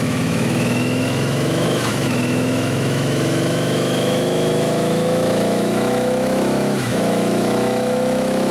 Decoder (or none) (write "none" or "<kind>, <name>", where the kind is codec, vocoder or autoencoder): autoencoder, DAC-VAE